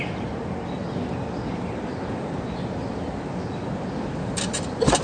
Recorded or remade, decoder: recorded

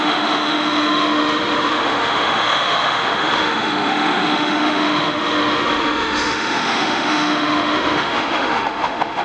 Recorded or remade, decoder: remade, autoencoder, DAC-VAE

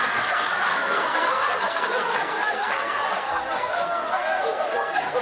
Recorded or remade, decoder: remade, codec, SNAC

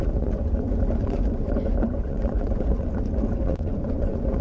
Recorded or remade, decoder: remade, vocoder, Vocos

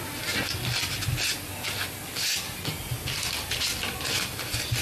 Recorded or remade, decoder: recorded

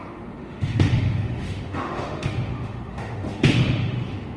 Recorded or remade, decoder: remade, autoencoder, DAC-VAE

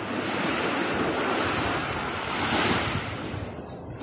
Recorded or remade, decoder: recorded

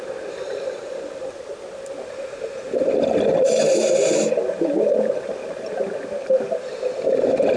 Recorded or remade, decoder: recorded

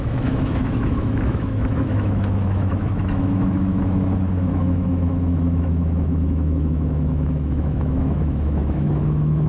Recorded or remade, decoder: remade, autoencoder, DAC-VAE